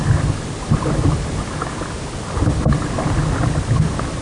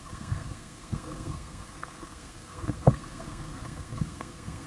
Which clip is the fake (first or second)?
second